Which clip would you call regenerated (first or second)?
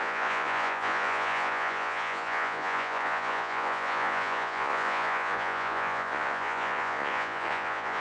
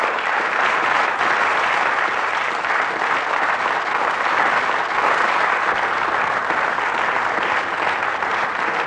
first